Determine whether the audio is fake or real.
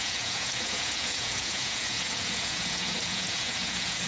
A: fake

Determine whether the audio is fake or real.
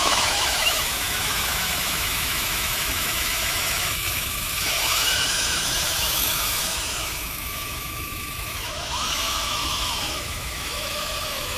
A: fake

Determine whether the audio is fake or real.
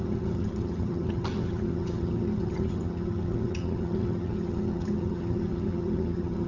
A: fake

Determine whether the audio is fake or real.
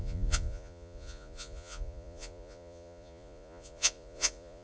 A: fake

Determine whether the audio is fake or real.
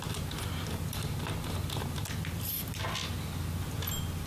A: real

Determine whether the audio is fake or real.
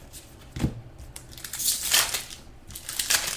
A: real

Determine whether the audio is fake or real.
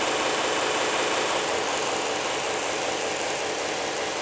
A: real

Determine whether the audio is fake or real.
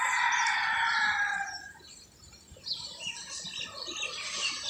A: fake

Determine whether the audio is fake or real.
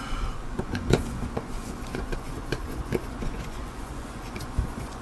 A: fake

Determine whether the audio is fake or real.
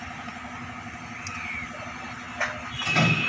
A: real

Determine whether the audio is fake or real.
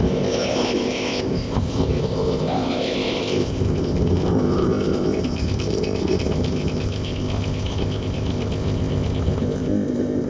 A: fake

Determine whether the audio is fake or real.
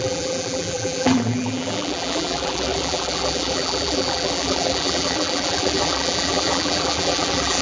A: fake